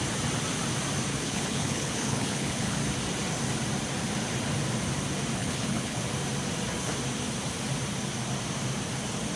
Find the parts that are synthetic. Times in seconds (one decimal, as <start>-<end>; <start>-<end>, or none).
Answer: 1.1-2.8; 5.4-6.0

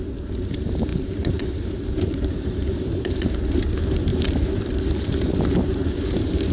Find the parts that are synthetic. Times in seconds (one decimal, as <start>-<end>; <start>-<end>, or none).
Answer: 0.0-6.5

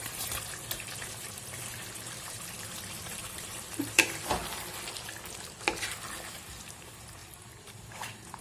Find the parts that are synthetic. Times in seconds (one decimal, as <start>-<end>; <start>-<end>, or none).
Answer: 0.0-4.4; 6.6-8.4

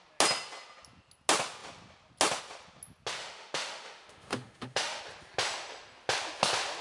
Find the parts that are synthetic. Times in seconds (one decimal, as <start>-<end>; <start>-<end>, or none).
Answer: 3.2-5.0